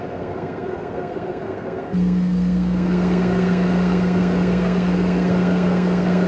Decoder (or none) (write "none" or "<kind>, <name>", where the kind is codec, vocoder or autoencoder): codec, SNAC